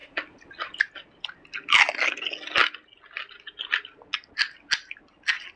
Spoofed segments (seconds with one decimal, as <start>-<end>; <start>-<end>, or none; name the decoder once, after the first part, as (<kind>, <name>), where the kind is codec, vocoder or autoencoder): none